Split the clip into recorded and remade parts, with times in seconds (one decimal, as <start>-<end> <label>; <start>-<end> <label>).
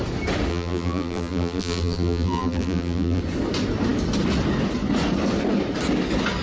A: 0.0-0.5 recorded; 0.5-3.2 remade; 3.2-6.4 recorded